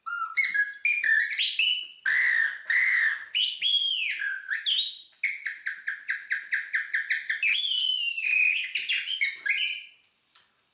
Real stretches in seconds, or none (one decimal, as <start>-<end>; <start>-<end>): 0.0-10.7